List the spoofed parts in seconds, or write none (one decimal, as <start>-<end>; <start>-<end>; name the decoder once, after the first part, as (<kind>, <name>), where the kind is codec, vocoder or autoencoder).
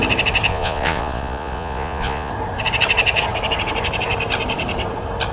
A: 0.5-2.3 (vocoder, Vocos)